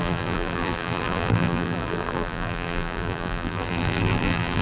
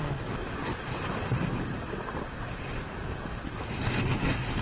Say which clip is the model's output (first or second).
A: first